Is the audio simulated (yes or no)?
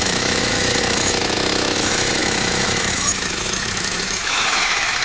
yes